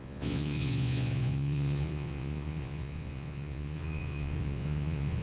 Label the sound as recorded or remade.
remade